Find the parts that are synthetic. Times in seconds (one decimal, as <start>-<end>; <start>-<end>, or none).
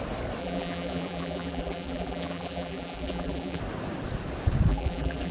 0.4-3.6; 4.7-5.3